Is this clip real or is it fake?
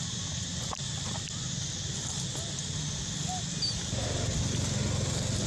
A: real